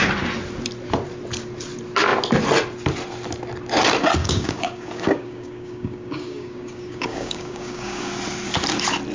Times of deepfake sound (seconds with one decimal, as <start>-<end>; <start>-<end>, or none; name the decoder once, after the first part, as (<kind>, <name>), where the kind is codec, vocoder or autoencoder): 4.2-8.1 (codec, DAC)